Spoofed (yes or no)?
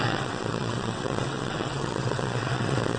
yes